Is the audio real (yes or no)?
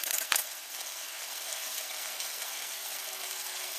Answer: no